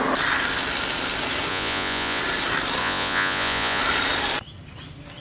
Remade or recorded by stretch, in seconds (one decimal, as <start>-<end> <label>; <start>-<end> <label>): 0.0-1.5 recorded; 1.5-2.2 remade; 2.2-2.8 recorded; 2.8-3.8 remade; 3.8-5.2 recorded